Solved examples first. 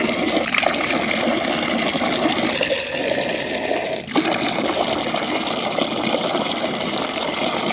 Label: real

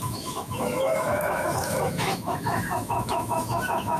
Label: fake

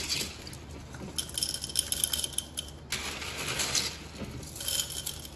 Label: real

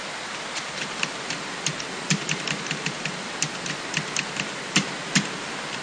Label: real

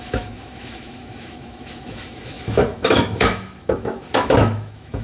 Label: fake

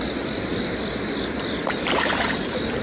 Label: real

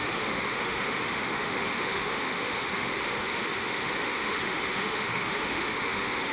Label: fake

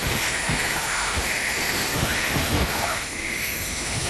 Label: fake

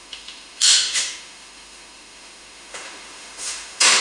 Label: fake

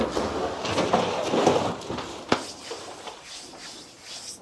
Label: real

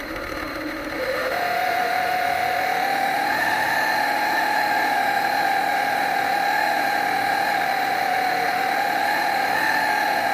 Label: fake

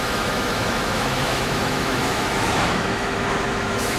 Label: fake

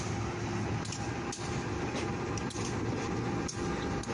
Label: real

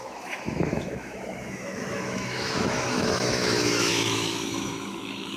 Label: fake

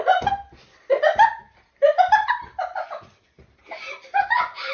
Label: real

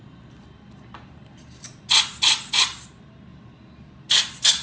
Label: real